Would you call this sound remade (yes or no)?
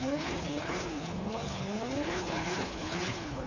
yes